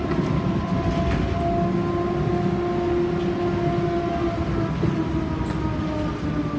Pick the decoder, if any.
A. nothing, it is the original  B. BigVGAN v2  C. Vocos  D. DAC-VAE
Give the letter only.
A